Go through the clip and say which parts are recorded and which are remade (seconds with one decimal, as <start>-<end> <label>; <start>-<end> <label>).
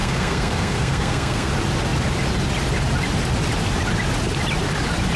0.0-1.5 remade; 1.5-5.2 recorded